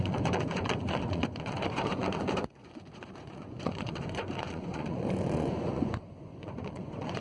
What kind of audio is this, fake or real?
fake